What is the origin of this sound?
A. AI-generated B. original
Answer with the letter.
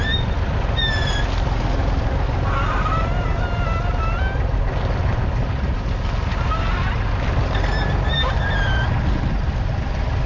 B